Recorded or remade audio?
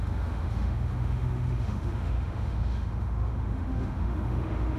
remade